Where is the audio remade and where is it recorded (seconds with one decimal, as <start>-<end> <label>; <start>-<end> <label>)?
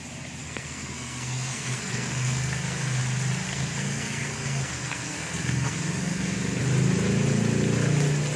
0.0-0.4 recorded; 0.4-3.0 remade; 3.0-3.5 recorded; 3.5-6.6 remade; 6.6-8.4 recorded